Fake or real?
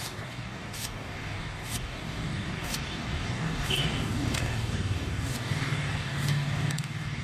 fake